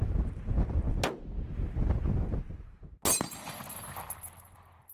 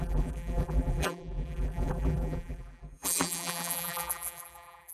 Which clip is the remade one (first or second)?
second